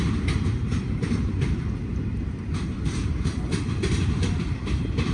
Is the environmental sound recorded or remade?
remade